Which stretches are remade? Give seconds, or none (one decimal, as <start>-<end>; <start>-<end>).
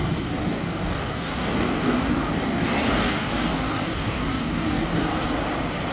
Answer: 0.0-5.1